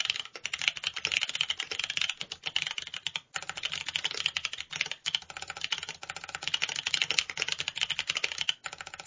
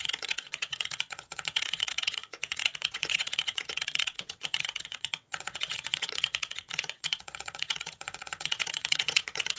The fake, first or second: second